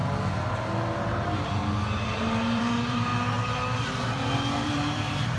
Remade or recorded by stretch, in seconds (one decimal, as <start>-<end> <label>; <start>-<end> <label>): 0.0-1.0 recorded; 1.0-1.6 remade; 1.6-2.2 recorded; 2.2-3.1 remade; 3.1-4.6 recorded; 4.6-5.4 remade